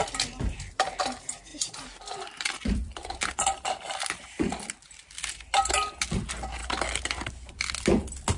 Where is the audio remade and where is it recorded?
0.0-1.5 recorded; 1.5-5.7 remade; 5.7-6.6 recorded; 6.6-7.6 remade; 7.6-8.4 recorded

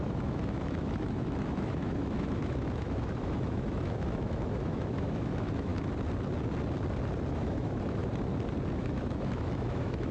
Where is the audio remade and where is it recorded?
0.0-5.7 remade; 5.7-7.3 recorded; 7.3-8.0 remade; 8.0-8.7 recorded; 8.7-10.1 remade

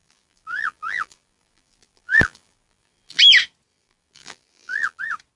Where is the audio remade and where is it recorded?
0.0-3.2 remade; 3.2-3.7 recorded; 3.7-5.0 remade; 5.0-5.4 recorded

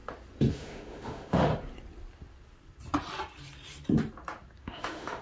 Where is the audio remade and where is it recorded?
0.0-0.5 recorded; 0.5-1.5 remade; 1.5-4.6 recorded; 4.6-5.2 remade